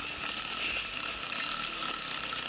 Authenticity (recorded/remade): recorded